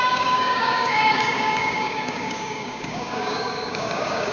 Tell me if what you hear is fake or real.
fake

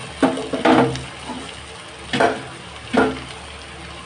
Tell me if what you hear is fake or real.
real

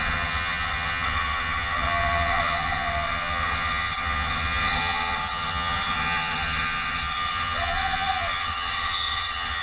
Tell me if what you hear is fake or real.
fake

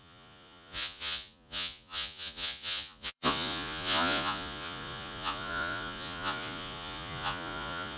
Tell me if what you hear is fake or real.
fake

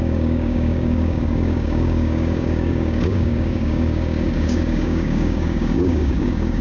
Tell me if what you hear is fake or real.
fake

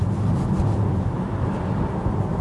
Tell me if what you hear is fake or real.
real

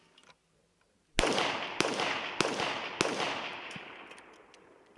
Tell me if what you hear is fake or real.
real